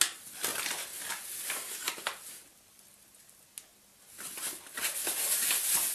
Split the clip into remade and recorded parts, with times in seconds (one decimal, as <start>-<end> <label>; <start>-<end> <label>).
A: 0.0-5.9 recorded